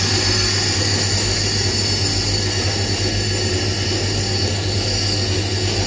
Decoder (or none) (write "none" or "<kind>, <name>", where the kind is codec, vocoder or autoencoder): none